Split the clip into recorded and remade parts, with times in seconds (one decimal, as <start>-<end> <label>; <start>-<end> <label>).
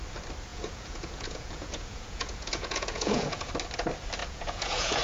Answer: 0.0-0.5 recorded; 0.5-3.5 remade; 3.5-4.2 recorded; 4.2-5.0 remade